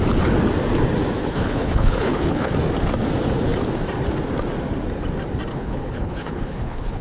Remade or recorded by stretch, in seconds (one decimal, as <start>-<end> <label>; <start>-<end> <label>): 0.0-1.2 recorded; 1.2-2.5 remade; 2.5-5.5 recorded; 5.5-7.0 remade

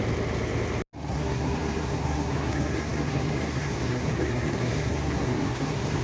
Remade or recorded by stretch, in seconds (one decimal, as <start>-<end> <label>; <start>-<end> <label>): 0.0-1.1 recorded; 1.1-6.0 remade

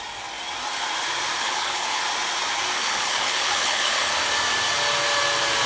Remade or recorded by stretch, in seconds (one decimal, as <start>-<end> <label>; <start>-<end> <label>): 0.0-1.4 recorded; 1.4-2.0 remade; 2.0-2.8 recorded; 2.8-4.1 remade; 4.1-5.7 recorded

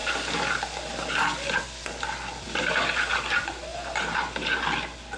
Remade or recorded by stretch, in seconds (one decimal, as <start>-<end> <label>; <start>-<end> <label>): 0.0-5.2 recorded